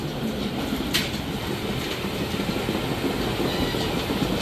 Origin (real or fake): real